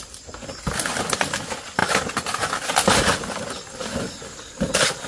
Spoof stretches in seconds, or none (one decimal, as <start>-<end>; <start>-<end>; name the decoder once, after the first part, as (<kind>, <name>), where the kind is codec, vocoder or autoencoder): none